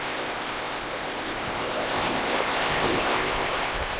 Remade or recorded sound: remade